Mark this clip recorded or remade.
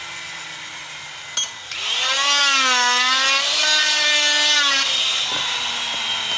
recorded